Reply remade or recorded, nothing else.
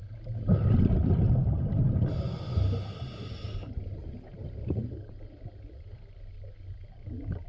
recorded